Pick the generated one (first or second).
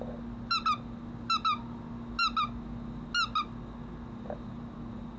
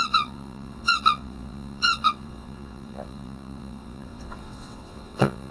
second